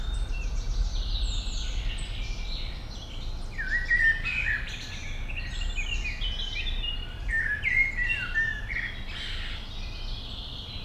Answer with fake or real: real